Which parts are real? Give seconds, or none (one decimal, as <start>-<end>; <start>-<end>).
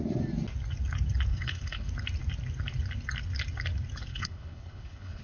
0.0-1.3; 1.9-4.1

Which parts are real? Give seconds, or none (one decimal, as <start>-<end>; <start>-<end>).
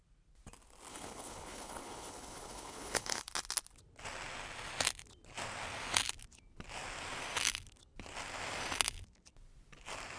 0.0-0.9; 3.3-10.2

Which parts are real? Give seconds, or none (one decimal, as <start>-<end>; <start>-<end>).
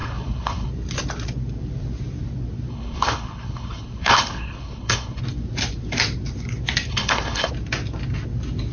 0.7-2.7; 5.2-6.9; 7.5-8.7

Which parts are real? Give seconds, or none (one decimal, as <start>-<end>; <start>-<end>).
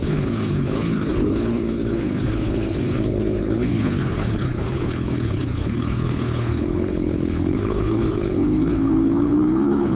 none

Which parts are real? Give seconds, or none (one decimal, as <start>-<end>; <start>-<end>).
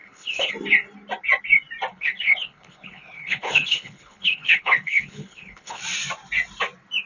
0.5-1.9; 5.8-7.1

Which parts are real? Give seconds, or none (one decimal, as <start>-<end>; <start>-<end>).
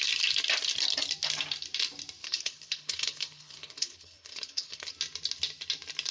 0.0-2.2; 4.9-6.1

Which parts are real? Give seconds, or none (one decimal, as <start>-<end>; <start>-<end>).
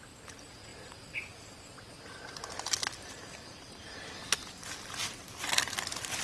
0.0-6.2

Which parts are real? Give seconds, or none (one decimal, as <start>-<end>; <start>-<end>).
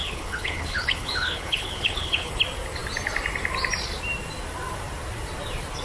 2.3-5.8